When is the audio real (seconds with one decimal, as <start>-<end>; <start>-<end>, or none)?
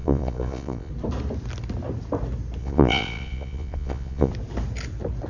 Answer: 0.9-2.6; 4.3-5.3